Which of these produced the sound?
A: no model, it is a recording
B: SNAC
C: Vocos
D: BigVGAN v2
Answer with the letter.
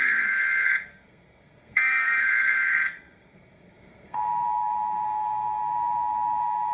B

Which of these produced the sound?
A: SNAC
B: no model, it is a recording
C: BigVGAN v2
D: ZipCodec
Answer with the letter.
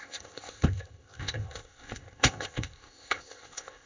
D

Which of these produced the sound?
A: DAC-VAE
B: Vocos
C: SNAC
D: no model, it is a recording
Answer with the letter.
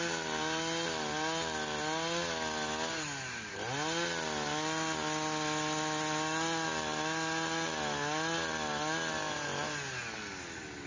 D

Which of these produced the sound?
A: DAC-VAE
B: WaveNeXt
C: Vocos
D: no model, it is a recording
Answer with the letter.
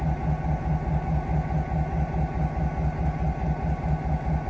D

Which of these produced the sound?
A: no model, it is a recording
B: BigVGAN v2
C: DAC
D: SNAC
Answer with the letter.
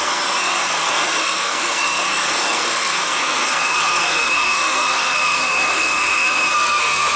D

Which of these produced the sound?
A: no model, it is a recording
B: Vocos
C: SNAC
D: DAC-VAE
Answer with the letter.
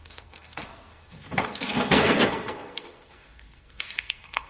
C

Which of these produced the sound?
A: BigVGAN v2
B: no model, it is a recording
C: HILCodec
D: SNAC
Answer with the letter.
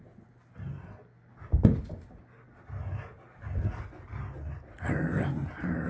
B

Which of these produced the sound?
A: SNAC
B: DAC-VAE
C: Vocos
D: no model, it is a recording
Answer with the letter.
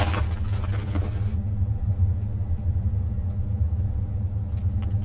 D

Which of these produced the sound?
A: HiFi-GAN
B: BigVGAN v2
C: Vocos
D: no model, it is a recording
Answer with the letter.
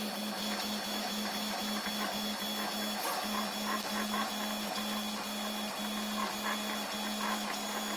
D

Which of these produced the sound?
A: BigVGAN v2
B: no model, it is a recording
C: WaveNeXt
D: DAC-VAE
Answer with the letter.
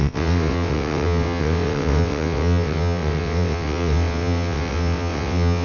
C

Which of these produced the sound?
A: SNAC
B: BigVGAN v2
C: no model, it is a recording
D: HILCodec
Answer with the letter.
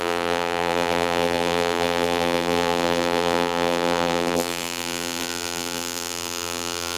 B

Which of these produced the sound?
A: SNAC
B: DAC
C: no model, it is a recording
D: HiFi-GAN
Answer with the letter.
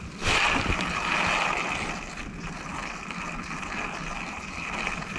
C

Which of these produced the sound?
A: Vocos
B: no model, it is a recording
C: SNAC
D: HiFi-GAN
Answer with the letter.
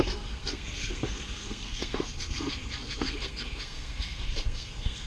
C